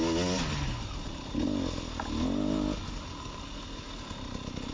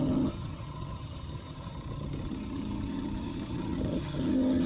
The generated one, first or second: second